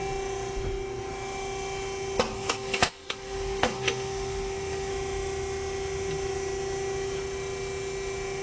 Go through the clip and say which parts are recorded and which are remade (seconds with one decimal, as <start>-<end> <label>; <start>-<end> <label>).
0.0-2.3 recorded; 2.3-4.9 remade; 4.9-8.4 recorded